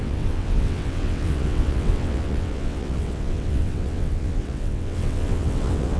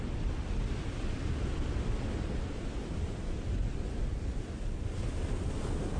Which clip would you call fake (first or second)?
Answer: first